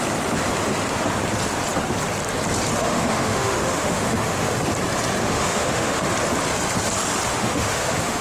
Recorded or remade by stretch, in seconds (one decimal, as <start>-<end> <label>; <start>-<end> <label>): 0.0-2.8 recorded; 2.8-4.6 remade; 4.6-5.2 recorded; 5.2-6.1 remade; 6.1-7.3 recorded; 7.3-8.2 remade